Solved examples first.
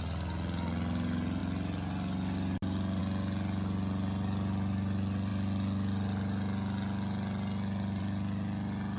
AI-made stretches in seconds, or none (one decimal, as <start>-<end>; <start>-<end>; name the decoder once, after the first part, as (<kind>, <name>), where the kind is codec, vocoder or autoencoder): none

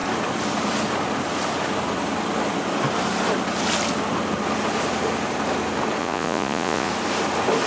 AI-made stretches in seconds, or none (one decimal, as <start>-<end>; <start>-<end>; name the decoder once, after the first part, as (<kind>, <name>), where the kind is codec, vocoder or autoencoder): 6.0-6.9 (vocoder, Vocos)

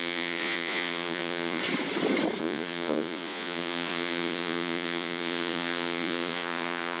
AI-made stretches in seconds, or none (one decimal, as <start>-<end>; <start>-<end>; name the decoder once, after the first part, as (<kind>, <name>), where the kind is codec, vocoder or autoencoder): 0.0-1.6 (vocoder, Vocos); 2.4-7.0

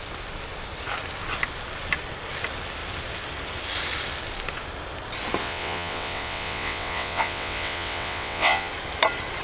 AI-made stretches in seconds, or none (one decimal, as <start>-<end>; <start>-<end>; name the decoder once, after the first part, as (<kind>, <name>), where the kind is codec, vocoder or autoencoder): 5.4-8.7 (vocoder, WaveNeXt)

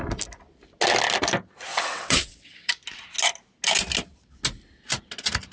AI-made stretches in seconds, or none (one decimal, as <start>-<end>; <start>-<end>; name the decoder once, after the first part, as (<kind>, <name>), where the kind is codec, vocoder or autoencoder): 1.7-2.7 (vocoder, WaveNeXt)

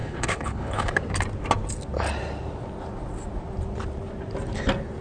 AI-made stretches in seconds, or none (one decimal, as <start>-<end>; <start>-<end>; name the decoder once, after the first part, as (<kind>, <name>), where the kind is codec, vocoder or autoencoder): 0.0-0.9 (codec, HILCodec)